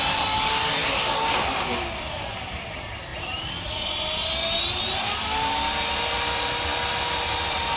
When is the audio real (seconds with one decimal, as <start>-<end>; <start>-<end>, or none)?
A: 0.0-7.8